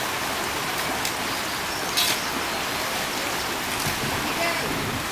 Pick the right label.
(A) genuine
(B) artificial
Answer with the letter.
A